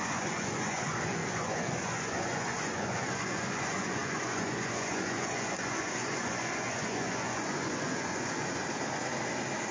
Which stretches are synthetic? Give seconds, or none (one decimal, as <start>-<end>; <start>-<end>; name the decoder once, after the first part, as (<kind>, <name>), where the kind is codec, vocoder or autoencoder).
0.0-8.6 (vocoder, Vocos)